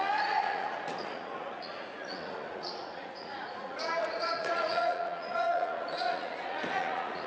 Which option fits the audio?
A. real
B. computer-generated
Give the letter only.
B